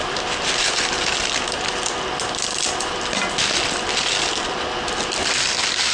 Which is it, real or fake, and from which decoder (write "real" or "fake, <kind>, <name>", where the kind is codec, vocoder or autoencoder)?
real